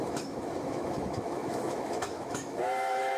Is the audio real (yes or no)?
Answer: no